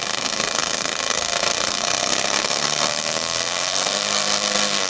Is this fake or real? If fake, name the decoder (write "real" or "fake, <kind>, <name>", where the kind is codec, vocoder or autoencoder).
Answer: fake, codec, SNAC